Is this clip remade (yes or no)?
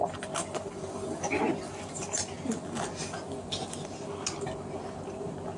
no